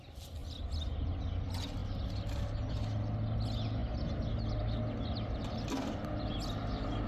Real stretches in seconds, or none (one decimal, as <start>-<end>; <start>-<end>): 0.0-7.1